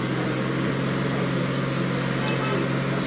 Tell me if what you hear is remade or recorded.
recorded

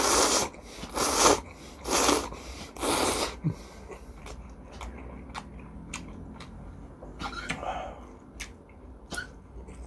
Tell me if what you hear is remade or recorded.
recorded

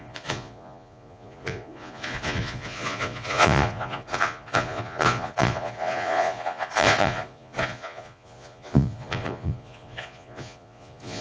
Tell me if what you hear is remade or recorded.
remade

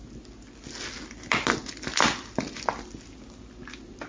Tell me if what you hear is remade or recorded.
recorded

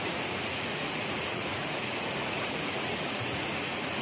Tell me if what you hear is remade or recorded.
remade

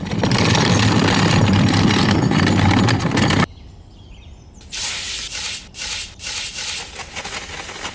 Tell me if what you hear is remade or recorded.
recorded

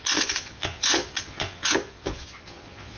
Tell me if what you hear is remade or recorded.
remade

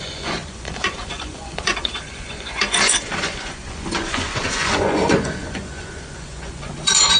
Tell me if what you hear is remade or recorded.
remade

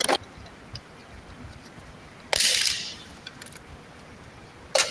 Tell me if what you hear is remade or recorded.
recorded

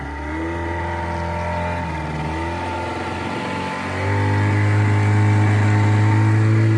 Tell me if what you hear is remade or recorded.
recorded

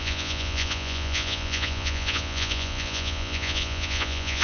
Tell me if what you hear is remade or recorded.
remade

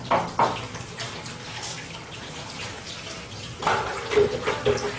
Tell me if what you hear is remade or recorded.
recorded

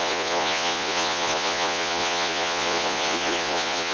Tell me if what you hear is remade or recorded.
remade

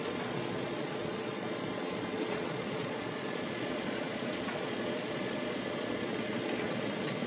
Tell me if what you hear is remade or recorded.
remade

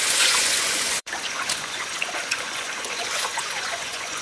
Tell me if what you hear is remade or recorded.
remade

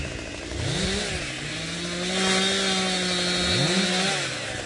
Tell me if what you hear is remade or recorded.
recorded